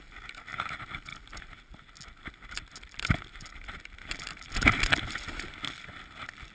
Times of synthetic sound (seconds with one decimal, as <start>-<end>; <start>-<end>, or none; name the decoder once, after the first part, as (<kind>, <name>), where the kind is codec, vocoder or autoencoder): none